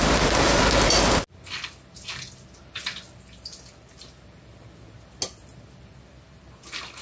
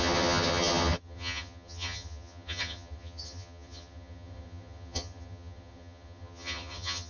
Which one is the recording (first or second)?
first